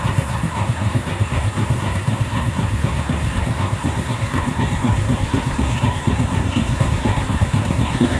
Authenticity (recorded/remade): remade